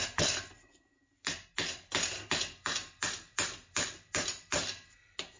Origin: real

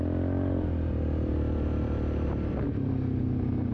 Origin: real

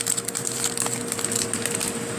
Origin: real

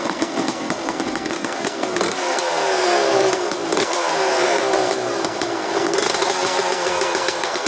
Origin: fake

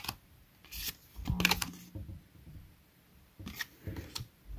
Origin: real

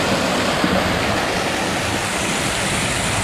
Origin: real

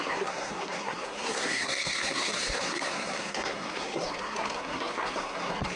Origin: fake